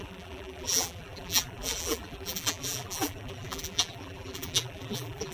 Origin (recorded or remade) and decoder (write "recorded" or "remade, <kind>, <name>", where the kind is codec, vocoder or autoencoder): remade, vocoder, BigVGAN v2